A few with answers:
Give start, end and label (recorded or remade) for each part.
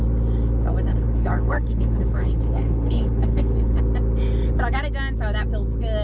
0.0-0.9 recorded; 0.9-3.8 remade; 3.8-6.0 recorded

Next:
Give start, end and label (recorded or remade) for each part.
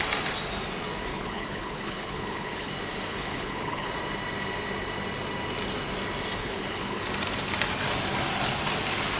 0.0-1.1 recorded; 1.1-2.7 remade; 2.7-3.1 recorded; 3.1-3.9 remade; 3.9-6.4 recorded; 6.4-7.0 remade; 7.0-9.2 recorded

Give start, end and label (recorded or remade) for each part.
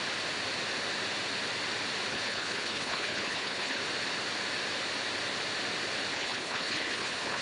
0.0-2.1 recorded; 2.1-3.8 remade; 3.8-6.1 recorded; 6.1-7.4 remade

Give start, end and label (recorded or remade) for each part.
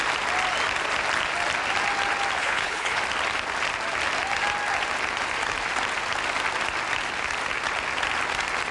0.0-2.4 recorded; 2.4-3.0 remade; 3.0-8.7 recorded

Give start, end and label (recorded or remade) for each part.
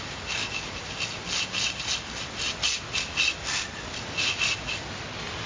0.0-5.5 recorded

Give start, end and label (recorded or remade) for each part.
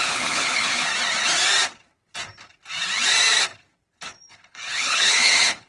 0.0-0.9 remade; 0.9-4.3 recorded; 4.3-5.7 remade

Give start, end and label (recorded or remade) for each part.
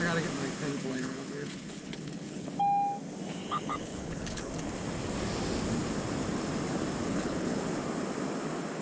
0.0-0.7 recorded; 0.7-2.5 remade; 2.5-3.4 recorded; 3.4-4.5 remade; 4.5-7.0 recorded; 7.0-7.6 remade; 7.6-8.8 recorded